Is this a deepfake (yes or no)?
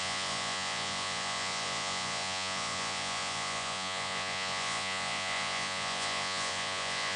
yes